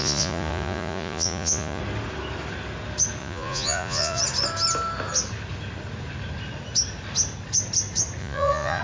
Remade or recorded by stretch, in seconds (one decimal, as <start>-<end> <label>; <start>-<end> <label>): 0.0-1.8 remade; 1.8-3.2 recorded; 3.2-4.2 remade; 4.2-8.2 recorded; 8.2-8.8 remade